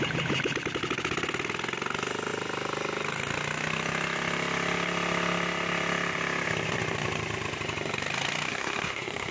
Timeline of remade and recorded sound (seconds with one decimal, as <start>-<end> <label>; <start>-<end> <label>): 0.0-8.5 recorded; 8.5-9.3 remade